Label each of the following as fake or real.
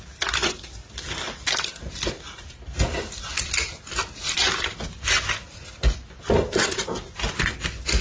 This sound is real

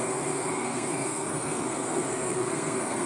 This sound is fake